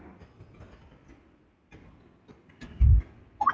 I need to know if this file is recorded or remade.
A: recorded